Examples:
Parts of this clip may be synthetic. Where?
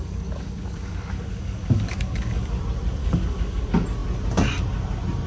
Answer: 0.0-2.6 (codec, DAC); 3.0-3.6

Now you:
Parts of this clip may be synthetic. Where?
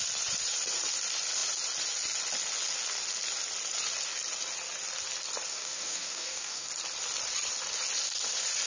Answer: 5.5-6.7 (codec, DAC)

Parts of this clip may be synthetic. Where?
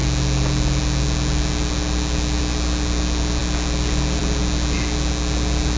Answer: none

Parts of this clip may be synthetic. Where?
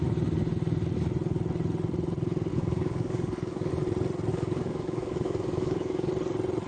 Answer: 2.5-3.7 (codec, DAC); 4.3-6.1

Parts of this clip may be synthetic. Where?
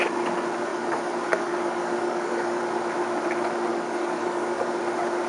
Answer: 0.7-2.6 (codec, DAC); 3.7-4.7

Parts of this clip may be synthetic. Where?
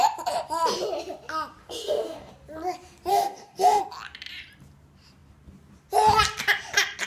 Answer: 1.6-2.3 (codec, DAC); 3.1-3.8